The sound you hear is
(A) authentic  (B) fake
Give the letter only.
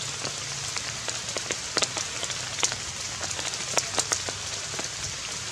A